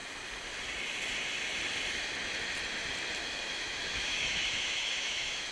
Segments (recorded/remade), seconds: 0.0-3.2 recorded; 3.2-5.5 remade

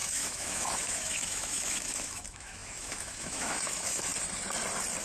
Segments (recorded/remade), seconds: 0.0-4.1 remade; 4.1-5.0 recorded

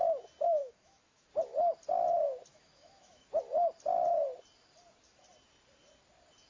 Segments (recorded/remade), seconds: 0.0-0.6 recorded; 0.6-1.3 remade; 1.3-2.5 recorded; 2.5-3.4 remade; 3.4-6.5 recorded

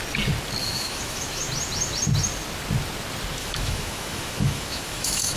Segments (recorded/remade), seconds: 0.0-0.6 recorded; 0.6-1.4 remade; 1.4-3.4 recorded; 3.4-5.4 remade